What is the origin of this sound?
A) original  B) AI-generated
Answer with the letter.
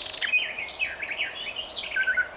A